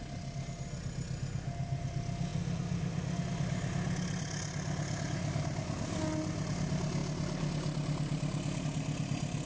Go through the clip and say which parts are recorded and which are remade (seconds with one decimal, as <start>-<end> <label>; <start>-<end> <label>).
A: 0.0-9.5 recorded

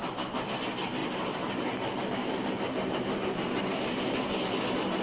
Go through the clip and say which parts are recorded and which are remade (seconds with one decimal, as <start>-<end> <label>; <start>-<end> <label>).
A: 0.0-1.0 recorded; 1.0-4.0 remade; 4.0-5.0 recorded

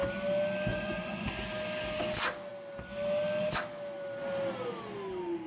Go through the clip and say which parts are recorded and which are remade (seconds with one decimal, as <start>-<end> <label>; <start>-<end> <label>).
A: 0.0-0.7 recorded; 0.7-1.3 remade; 1.3-5.5 recorded

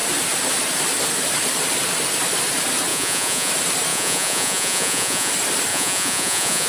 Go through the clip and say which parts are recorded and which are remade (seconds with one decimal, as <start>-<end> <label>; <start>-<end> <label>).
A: 0.0-2.9 recorded; 2.9-3.5 remade; 3.5-3.9 recorded; 3.9-5.3 remade; 5.3-5.7 recorded; 5.7-6.7 remade

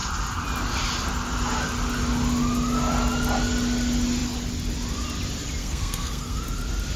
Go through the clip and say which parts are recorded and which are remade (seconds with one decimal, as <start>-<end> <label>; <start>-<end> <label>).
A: 0.0-5.6 recorded; 5.6-6.4 remade; 6.4-7.0 recorded